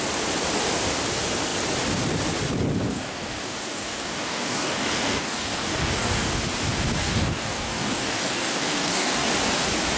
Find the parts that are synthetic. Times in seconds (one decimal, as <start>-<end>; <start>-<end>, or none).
2.9-6.4; 7.0-9.3